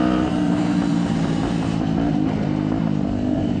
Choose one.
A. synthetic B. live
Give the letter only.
A